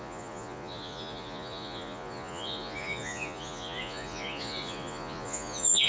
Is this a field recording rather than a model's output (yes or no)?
no